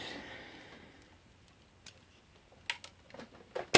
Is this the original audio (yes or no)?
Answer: yes